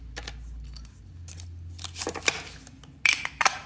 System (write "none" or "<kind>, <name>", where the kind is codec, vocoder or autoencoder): none